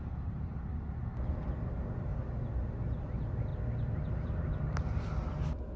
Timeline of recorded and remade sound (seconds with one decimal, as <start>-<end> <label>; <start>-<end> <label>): 0.0-0.7 remade; 0.7-1.5 recorded; 1.5-2.1 remade; 2.1-3.0 recorded; 3.0-3.5 remade; 3.5-4.1 recorded; 4.1-4.5 remade; 4.5-5.8 recorded